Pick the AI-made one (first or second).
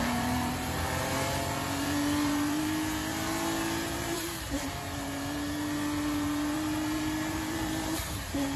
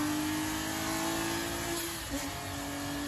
first